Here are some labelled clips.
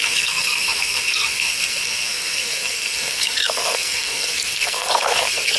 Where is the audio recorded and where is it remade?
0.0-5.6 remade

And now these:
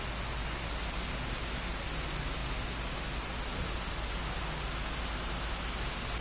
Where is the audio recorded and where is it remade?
0.0-6.2 recorded

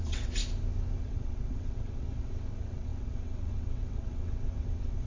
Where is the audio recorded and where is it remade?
0.0-0.4 remade; 0.4-1.0 recorded; 1.0-5.1 remade